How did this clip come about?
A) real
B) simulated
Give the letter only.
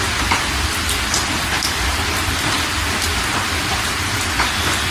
A